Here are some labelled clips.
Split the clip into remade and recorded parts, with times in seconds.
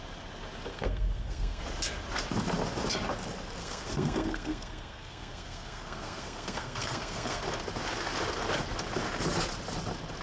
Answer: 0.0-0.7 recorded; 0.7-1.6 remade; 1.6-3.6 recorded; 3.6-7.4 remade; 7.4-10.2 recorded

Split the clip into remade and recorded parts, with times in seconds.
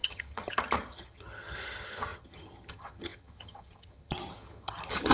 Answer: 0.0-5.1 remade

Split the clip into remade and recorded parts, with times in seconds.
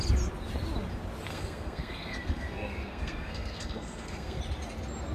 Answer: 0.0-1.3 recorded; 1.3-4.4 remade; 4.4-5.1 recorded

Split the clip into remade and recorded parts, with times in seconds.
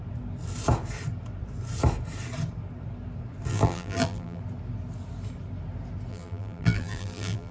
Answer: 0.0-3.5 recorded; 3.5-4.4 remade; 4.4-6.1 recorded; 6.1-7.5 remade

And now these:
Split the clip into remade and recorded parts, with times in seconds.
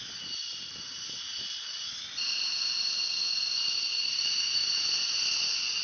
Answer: 0.0-5.8 recorded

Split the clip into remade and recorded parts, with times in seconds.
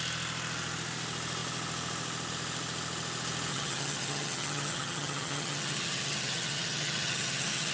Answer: 0.0-3.5 recorded; 3.5-7.7 remade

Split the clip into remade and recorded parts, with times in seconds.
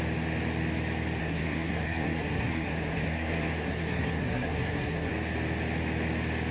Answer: 0.0-1.2 recorded; 1.2-5.1 remade; 5.1-6.5 recorded